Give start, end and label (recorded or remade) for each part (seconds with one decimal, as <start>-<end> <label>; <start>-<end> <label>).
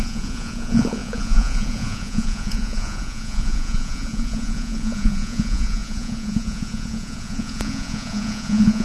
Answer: 0.0-8.8 remade